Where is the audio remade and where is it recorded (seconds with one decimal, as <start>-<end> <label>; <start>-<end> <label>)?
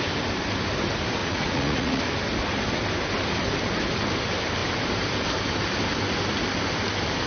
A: 0.0-1.2 recorded; 1.2-2.0 remade; 2.0-7.3 recorded